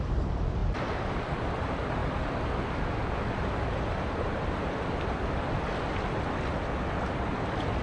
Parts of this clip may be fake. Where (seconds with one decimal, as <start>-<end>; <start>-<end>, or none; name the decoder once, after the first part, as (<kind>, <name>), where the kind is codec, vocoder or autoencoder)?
none